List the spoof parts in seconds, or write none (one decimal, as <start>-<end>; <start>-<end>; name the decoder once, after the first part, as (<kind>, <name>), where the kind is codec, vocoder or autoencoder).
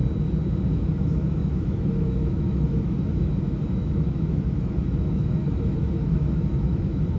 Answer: 0.7-7.2 (autoencoder, DAC-VAE)